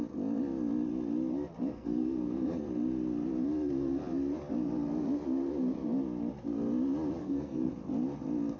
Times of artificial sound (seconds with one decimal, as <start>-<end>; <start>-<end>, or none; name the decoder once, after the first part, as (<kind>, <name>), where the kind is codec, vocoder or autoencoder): 1.7-2.7 (codec, SNAC); 7.2-7.7